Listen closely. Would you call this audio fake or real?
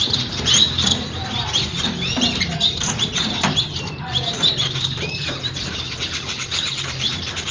fake